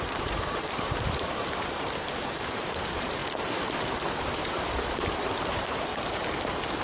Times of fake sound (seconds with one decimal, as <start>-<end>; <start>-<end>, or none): 0.0-3.2; 4.2-5.9